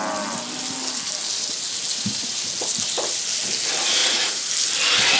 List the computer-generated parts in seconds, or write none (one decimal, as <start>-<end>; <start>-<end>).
1.9-2.4; 4.0-4.5